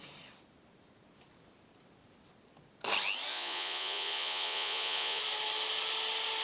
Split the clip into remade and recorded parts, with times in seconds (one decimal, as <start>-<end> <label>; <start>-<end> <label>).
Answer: 0.0-3.3 recorded; 3.3-5.2 remade; 5.2-6.4 recorded